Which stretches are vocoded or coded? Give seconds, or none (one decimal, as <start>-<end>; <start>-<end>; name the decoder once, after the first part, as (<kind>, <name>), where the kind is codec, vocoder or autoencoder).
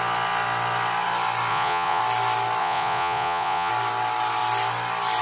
1.5-2.0 (vocoder, Vocos); 2.6-3.7